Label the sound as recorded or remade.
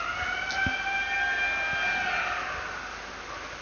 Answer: recorded